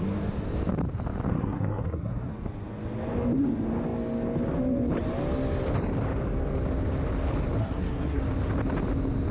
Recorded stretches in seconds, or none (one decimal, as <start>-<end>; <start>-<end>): 0.0-1.3; 2.3-7.6; 8.2-9.3